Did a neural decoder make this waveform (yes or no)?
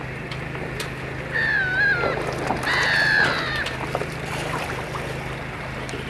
no